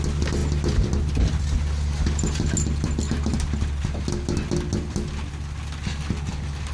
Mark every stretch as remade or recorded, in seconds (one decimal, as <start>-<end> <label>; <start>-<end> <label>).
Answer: 0.0-6.7 recorded